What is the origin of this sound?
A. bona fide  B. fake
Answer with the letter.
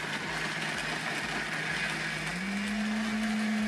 A